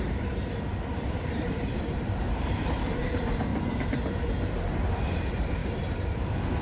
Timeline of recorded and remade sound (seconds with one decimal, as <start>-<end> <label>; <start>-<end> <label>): 0.0-3.5 remade; 3.5-4.2 recorded; 4.2-5.6 remade; 5.6-6.6 recorded